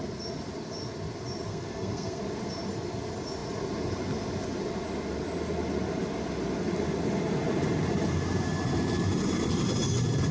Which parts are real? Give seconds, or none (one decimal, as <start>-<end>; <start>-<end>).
0.0-1.5; 2.2-10.3